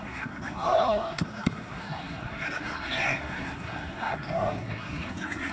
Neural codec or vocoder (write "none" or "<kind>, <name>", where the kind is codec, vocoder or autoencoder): codec, SNAC